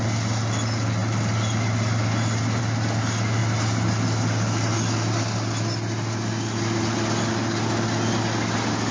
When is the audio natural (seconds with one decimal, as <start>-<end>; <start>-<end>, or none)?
0.0-8.9